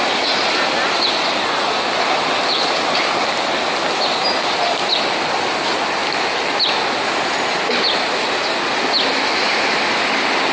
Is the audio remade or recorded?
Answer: recorded